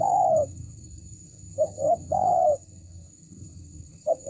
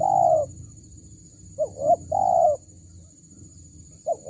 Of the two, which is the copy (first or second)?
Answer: first